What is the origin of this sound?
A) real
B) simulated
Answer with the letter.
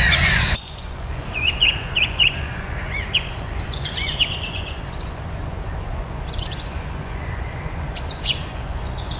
B